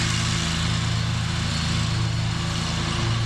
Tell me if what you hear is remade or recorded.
recorded